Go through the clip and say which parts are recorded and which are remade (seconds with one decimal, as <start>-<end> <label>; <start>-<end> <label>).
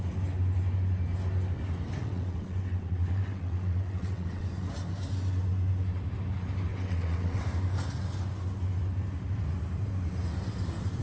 0.0-2.0 recorded; 2.0-4.5 remade; 4.5-6.7 recorded; 6.7-7.4 remade; 7.4-11.0 recorded